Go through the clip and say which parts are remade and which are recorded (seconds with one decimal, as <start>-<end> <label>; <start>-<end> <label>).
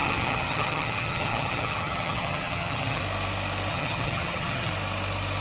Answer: 0.0-3.0 remade; 3.0-3.7 recorded; 3.7-4.7 remade; 4.7-5.4 recorded